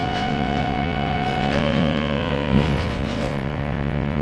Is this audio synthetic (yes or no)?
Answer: yes